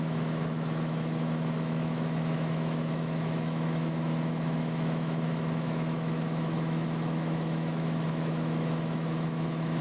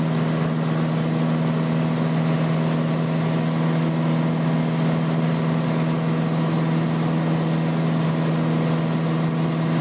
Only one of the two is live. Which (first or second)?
second